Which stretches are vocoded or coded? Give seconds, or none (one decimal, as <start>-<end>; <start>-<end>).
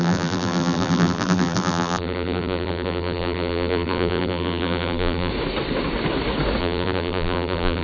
0.0-5.3; 6.6-7.8